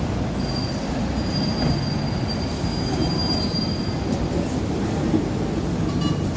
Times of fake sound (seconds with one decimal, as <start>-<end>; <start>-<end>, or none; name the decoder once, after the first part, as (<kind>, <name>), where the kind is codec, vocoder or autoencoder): none